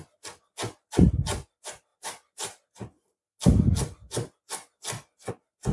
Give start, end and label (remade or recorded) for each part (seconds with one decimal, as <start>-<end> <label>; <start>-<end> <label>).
0.0-5.7 recorded